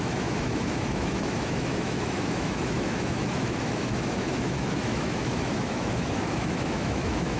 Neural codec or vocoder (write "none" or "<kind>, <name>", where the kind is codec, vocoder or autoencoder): autoencoder, DAC-VAE